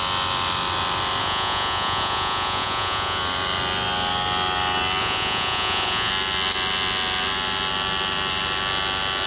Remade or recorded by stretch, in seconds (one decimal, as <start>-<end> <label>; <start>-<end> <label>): 0.0-1.2 recorded; 1.2-3.2 remade; 3.2-5.0 recorded; 5.0-6.1 remade; 6.1-9.3 recorded